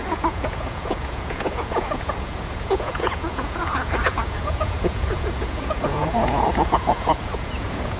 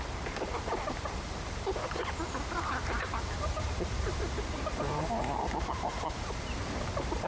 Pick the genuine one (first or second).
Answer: second